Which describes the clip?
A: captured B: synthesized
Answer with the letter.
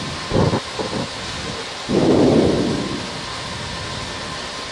A